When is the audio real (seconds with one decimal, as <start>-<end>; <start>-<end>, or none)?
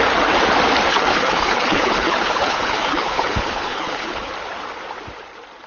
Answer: 0.0-0.9; 4.3-5.7